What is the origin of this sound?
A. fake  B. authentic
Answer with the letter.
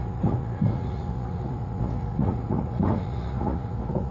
A